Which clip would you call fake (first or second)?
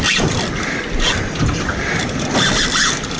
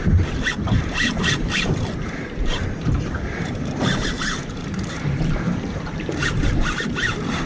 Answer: second